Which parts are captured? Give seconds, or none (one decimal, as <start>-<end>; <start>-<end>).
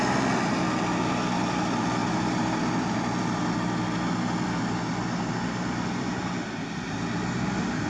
0.0-7.9